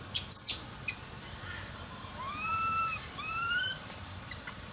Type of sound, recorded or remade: remade